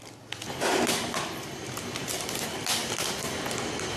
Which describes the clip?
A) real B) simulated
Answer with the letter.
A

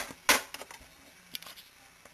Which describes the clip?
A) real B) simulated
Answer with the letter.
A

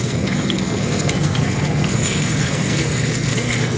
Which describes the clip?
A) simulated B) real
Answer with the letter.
A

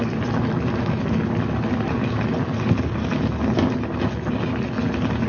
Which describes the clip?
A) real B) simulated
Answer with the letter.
A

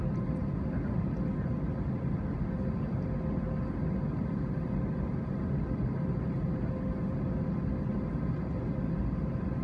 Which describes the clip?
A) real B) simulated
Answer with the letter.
A